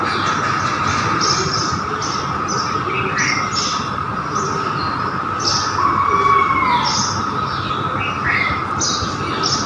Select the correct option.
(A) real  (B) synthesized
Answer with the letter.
A